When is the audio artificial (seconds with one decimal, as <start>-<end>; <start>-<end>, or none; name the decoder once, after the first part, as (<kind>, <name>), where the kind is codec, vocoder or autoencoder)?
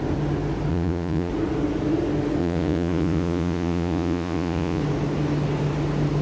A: 0.7-1.3 (vocoder, Vocos); 2.4-4.8